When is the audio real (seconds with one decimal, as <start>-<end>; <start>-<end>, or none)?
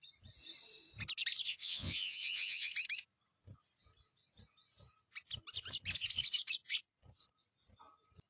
0.0-1.5; 2.7-8.3